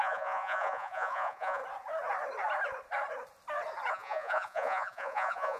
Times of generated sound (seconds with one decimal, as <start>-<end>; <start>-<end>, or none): 0.0-1.6; 3.9-5.6